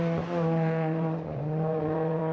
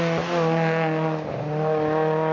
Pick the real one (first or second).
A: second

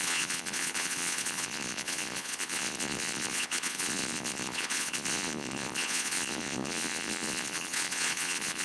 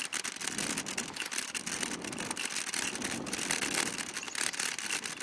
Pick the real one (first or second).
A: second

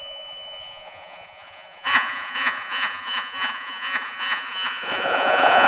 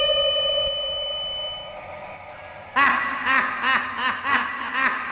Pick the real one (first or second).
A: second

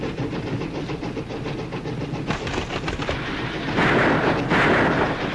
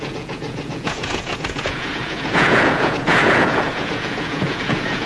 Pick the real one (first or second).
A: first